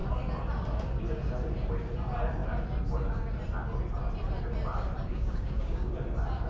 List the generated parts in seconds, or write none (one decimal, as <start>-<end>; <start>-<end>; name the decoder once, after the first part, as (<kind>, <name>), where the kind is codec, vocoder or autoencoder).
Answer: 5.1-5.9 (codec, DAC)